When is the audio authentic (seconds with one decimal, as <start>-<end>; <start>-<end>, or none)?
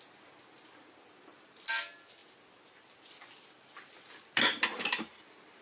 0.0-5.6